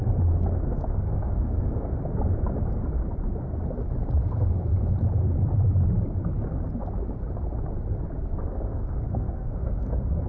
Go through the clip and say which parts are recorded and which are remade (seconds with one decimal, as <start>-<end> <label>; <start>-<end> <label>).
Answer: 0.0-0.6 recorded; 0.6-1.9 remade; 1.9-4.2 recorded; 4.2-4.7 remade; 4.7-8.5 recorded; 8.5-10.3 remade